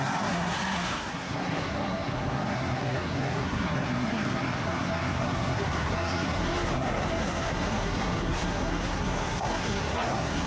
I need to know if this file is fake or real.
fake